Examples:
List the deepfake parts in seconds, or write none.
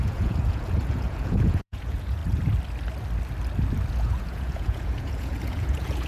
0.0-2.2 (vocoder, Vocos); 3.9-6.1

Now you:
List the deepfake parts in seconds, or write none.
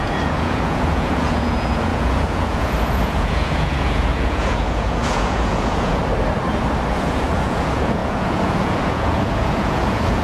0.0-6.0 (vocoder, Vocos); 6.9-10.2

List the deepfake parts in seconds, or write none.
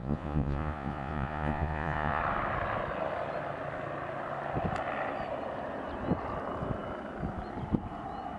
0.0-2.2 (vocoder, Vocos)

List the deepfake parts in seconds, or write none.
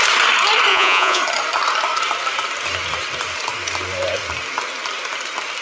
0.7-1.2 (vocoder, Vocos)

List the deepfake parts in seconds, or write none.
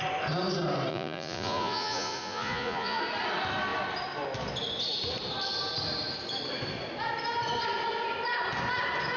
0.9-3.0 (vocoder, Vocos)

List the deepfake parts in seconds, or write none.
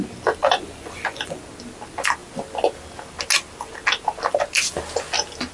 0.4-1.4 (vocoder, Vocos)